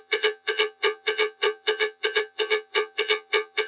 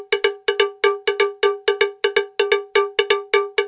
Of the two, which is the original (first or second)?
second